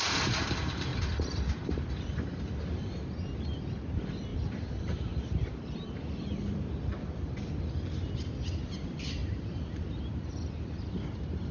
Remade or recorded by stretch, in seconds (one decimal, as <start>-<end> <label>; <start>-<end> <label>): 0.0-4.3 recorded; 4.3-7.4 remade; 7.4-9.2 recorded; 9.2-10.5 remade; 10.5-11.5 recorded